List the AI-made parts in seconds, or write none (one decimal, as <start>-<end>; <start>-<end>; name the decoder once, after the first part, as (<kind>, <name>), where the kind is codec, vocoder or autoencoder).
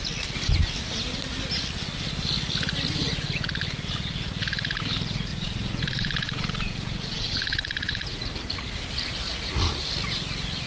5.3-8.3 (vocoder, Vocos)